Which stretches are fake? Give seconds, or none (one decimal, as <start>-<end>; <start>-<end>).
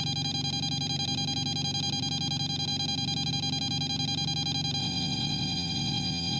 4.8-6.4